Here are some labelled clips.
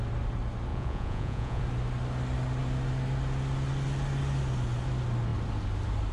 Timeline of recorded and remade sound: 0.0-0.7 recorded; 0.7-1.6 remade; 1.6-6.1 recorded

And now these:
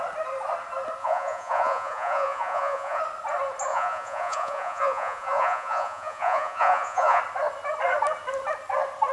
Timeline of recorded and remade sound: 0.0-1.0 recorded; 1.0-3.0 remade; 3.0-3.7 recorded; 3.7-7.2 remade; 7.2-9.1 recorded